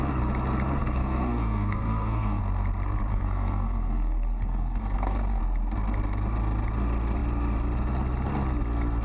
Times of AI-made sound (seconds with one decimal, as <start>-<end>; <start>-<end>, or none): 0.8-2.4; 3.1-5.4